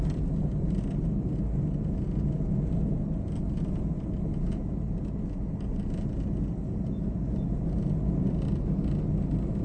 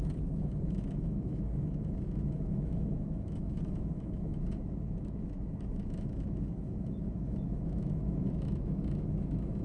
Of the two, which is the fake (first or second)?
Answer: second